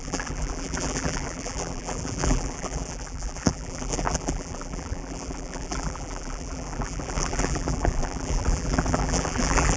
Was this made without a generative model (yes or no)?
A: no